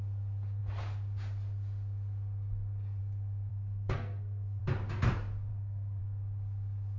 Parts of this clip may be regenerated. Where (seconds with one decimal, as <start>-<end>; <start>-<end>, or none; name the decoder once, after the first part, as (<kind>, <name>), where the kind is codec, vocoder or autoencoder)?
3.5-4.6 (codec, SNAC); 5.5-6.0